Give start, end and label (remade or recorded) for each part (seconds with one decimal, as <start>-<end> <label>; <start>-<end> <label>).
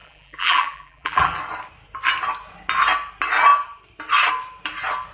0.0-1.4 remade; 1.4-5.1 recorded